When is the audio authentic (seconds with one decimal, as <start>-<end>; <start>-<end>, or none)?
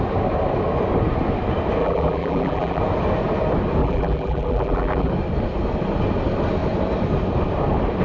0.0-1.8; 2.8-3.8; 5.1-8.0